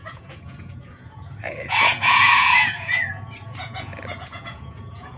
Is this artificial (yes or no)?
yes